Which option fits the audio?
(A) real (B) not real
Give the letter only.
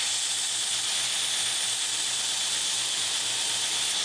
A